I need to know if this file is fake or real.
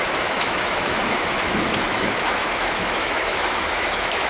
fake